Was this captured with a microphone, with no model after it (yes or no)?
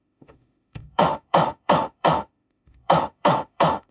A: no